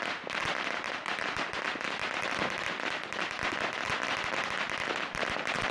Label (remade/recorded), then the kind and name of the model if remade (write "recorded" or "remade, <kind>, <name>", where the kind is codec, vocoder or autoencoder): remade, vocoder, BigVGAN v2